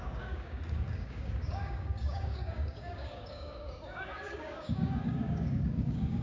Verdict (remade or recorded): remade